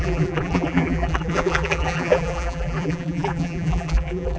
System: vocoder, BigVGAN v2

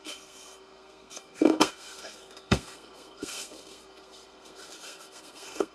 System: codec, SNAC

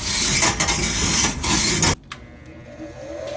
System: none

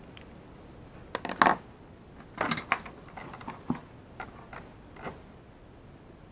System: none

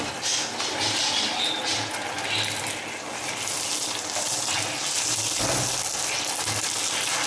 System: none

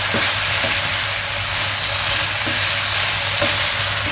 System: none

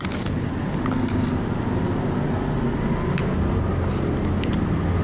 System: none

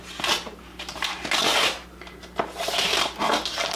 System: none